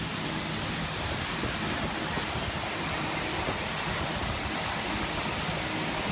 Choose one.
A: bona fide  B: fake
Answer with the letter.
A